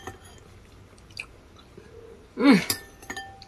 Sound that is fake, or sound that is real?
real